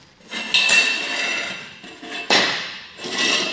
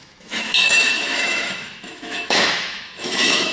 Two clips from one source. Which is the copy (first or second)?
second